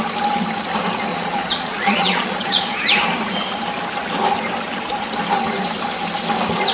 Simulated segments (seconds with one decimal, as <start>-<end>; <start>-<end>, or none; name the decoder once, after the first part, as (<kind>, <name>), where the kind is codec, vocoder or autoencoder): 1.1-2.8 (vocoder, Vocos)